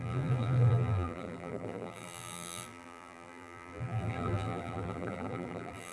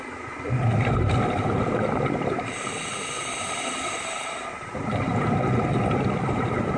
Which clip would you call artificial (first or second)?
first